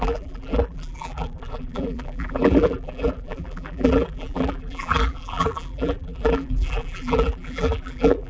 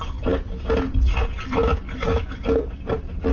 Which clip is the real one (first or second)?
second